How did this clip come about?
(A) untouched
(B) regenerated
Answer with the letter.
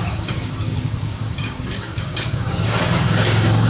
B